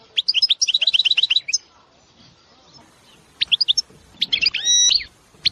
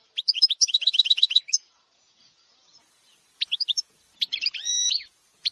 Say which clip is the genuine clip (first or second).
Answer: first